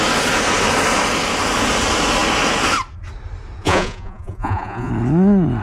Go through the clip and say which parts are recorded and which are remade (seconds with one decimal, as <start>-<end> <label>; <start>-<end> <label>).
0.0-3.6 recorded; 3.6-4.9 remade; 4.9-5.6 recorded